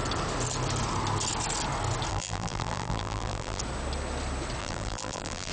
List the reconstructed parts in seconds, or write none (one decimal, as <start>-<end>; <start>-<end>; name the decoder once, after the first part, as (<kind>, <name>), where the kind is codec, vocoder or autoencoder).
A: 2.1-3.6 (vocoder, BigVGAN v2); 4.6-5.5